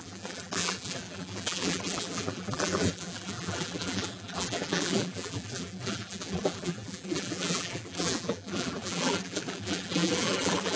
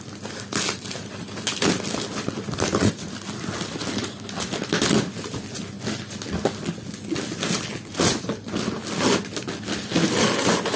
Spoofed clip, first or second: first